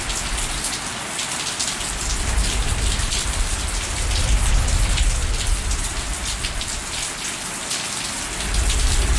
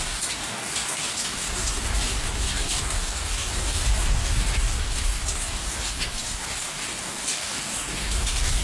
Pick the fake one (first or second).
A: second